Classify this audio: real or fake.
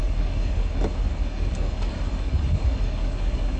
fake